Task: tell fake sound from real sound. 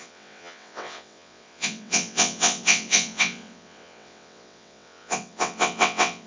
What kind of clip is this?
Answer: fake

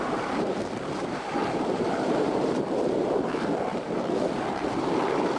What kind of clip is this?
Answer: fake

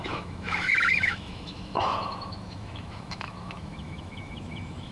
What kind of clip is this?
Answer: fake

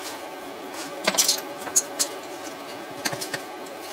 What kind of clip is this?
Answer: real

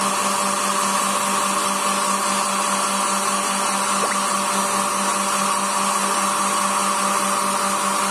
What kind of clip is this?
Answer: real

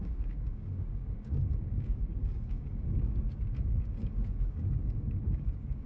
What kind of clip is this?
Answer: fake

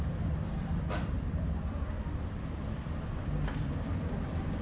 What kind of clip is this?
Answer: fake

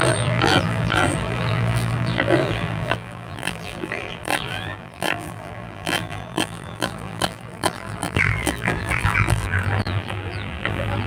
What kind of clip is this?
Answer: fake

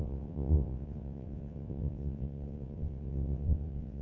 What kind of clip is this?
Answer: fake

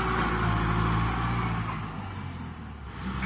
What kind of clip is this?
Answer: real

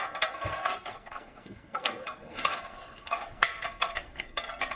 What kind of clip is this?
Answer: fake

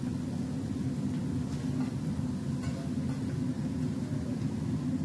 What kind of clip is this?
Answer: real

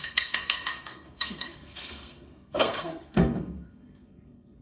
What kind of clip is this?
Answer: fake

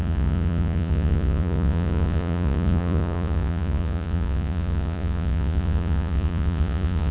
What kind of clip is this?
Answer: fake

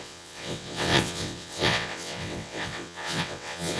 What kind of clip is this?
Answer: fake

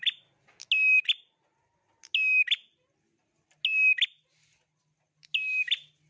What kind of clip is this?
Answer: real